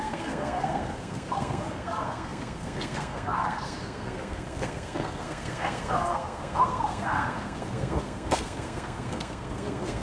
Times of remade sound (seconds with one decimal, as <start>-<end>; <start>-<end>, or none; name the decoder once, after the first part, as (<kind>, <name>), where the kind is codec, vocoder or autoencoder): 0.0-10.0 (codec, SNAC)